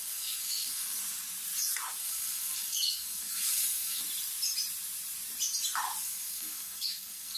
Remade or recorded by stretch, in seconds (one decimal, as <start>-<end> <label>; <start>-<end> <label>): 0.0-1.0 remade; 1.0-2.0 recorded; 2.0-4.0 remade; 4.0-6.0 recorded; 6.0-7.4 remade